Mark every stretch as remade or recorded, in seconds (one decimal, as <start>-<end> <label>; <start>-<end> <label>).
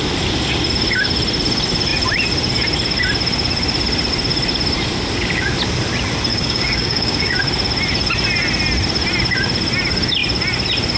0.0-6.3 recorded; 6.3-7.3 remade; 7.3-11.0 recorded